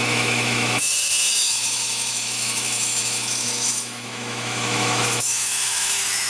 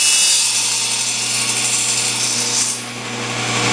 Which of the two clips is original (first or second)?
second